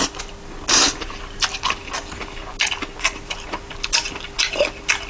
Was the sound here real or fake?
real